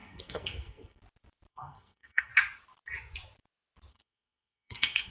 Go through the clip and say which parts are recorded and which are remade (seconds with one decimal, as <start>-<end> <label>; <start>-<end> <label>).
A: 0.0-1.0 remade; 1.0-1.5 recorded; 1.5-2.3 remade; 2.3-3.9 recorded; 3.9-5.1 remade